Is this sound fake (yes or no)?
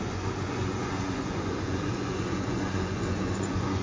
yes